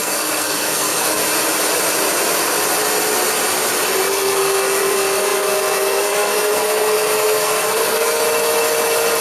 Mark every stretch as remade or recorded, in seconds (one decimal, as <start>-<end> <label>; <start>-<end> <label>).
0.0-1.2 remade; 1.2-4.1 recorded; 4.1-8.2 remade; 8.2-9.2 recorded